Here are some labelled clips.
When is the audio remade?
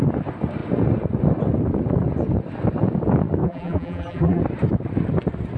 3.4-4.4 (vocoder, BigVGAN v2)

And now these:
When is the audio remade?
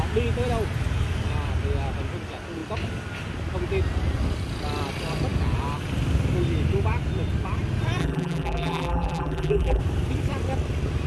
8.0-9.8 (vocoder, BigVGAN v2)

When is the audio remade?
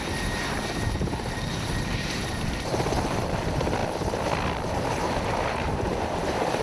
0.0-3.8 (vocoder, BigVGAN v2); 4.7-6.6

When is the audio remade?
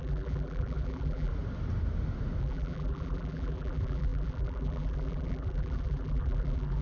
0.0-1.3 (vocoder, BigVGAN v2); 2.4-6.8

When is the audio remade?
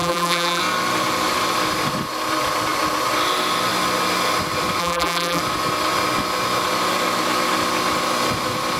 0.0-0.6 (vocoder, BigVGAN v2); 4.8-5.4